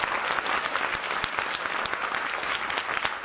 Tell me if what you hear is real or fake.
real